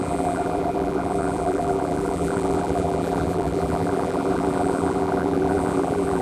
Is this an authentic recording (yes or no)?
no